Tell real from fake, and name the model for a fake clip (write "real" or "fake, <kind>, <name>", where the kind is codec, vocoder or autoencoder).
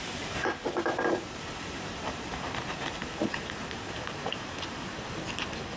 fake, vocoder, BigVGAN v2